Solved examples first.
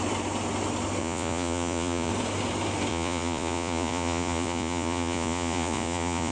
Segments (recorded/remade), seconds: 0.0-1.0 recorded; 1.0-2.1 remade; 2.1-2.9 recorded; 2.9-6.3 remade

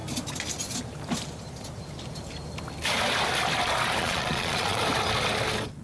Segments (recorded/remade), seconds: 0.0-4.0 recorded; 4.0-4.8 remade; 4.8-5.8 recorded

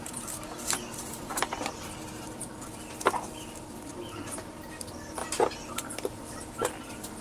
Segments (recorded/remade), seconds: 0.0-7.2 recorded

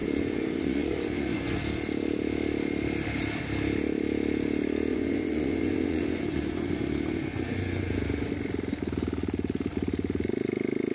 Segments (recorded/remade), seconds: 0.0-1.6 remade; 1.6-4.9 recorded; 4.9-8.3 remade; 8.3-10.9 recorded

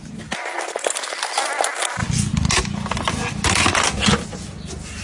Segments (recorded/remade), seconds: 0.0-5.0 recorded

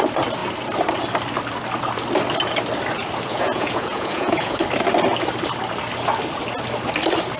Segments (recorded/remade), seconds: 0.0-3.3 recorded; 3.3-4.6 remade; 4.6-7.4 recorded